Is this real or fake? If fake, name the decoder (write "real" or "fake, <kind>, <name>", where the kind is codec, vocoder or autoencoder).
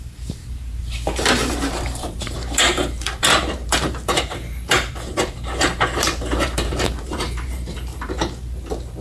fake, vocoder, BigVGAN v2